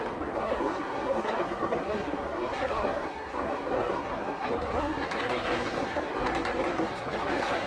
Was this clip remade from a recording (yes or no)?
yes